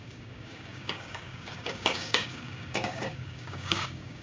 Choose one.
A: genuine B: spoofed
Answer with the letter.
B